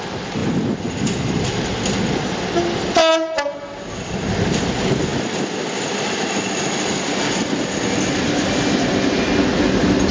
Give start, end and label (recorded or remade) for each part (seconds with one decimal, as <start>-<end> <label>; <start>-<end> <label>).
0.0-10.1 recorded